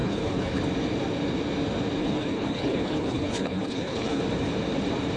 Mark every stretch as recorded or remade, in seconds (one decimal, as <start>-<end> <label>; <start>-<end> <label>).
0.0-0.6 remade; 0.6-2.0 recorded; 2.0-4.2 remade; 4.2-5.2 recorded